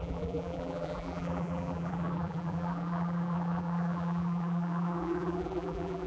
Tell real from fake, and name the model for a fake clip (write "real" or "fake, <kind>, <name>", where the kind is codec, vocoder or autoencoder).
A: fake, vocoder, BigVGAN v2